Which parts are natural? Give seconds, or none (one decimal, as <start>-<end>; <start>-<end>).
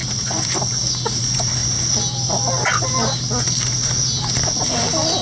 0.0-5.2